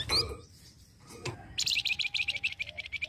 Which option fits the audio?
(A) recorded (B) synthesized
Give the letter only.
A